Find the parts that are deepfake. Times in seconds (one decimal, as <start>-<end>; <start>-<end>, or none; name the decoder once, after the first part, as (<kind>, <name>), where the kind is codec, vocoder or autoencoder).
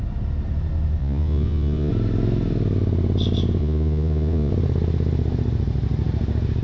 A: 1.0-1.9 (vocoder, Vocos); 3.6-4.5